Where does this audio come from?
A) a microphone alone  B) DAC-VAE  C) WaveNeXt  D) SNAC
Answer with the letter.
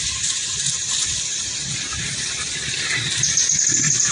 A